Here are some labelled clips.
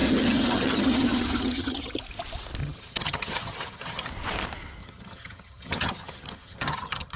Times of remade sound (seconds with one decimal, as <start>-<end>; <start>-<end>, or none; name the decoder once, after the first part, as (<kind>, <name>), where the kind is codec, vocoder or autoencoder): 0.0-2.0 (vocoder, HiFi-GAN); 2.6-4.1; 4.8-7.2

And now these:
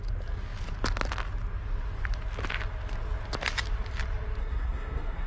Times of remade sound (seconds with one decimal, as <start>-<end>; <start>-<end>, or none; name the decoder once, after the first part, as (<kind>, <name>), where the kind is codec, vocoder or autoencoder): 4.4-5.3 (codec, SNAC)

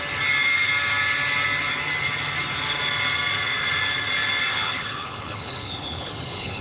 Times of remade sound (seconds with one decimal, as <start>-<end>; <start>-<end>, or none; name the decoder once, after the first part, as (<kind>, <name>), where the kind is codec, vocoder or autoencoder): 4.5-6.6 (codec, HILCodec)

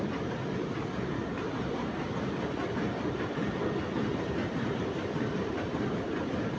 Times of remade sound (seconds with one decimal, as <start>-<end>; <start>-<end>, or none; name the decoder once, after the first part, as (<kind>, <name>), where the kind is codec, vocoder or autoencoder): 4.4-6.1 (vocoder, BigVGAN v2)

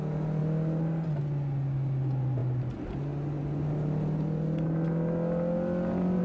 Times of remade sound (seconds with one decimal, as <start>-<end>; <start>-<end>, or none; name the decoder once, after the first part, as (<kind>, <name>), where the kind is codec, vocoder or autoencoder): none

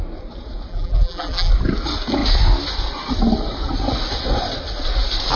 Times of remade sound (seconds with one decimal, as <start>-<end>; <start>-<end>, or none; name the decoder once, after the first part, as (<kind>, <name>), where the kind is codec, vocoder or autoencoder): 0.7-1.5 (vocoder, BigVGAN v2)